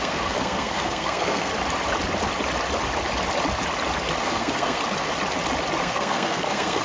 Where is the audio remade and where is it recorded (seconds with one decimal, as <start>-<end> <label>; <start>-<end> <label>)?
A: 0.0-1.5 remade; 1.5-4.2 recorded; 4.2-4.8 remade; 4.8-5.8 recorded; 5.8-6.8 remade